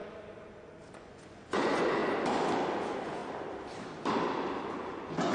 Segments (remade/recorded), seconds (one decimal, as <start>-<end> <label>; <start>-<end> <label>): 0.0-0.9 recorded; 0.9-2.0 remade; 2.0-2.8 recorded; 2.8-3.2 remade; 3.2-4.7 recorded; 4.7-5.3 remade